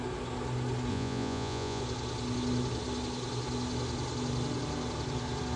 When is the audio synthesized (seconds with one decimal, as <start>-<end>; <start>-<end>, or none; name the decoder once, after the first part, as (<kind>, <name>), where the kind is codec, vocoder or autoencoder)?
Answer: 0.9-1.8 (vocoder, Vocos)